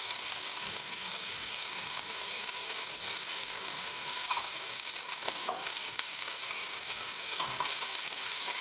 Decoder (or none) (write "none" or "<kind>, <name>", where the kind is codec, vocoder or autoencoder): codec, DAC